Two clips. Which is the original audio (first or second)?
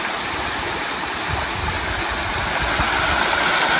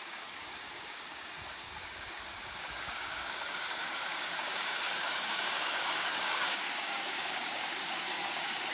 first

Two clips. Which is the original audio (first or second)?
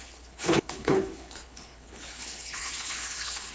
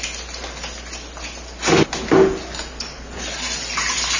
second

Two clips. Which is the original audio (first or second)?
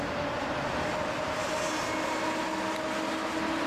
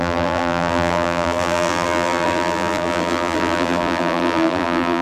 first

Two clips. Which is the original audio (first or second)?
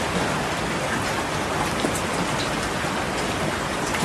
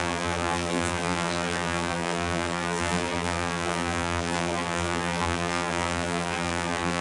first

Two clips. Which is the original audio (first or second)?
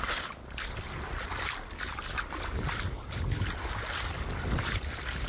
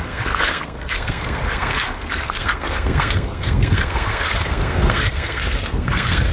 first